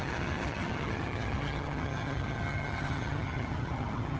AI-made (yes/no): yes